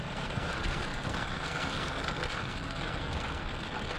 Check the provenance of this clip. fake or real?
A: fake